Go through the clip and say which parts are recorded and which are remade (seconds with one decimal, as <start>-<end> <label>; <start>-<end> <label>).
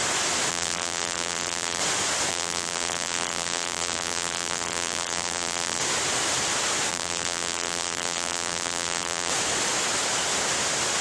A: 0.0-0.5 recorded; 0.5-1.8 remade; 1.8-2.3 recorded; 2.3-5.8 remade; 5.8-6.9 recorded; 6.9-9.3 remade; 9.3-11.0 recorded